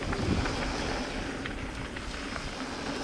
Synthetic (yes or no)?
no